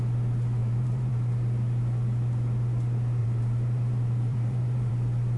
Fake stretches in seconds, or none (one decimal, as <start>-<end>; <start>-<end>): 0.6-1.1; 3.2-4.9